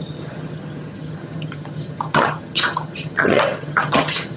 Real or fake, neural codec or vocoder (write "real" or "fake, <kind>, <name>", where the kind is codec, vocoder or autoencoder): fake, vocoder, HiFi-GAN